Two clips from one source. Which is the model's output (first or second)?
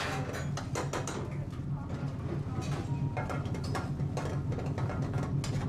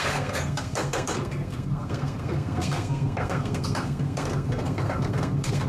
second